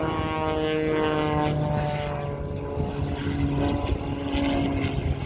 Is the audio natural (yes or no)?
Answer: yes